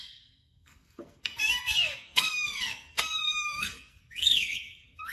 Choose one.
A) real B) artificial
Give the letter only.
B